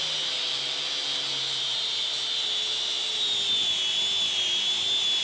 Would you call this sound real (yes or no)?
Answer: yes